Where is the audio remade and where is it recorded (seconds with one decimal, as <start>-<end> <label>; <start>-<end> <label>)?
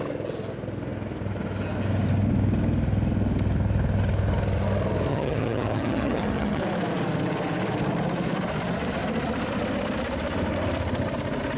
0.0-5.1 recorded; 5.1-6.6 remade; 6.6-11.6 recorded